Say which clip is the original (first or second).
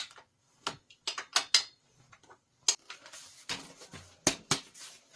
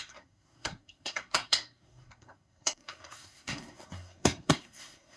first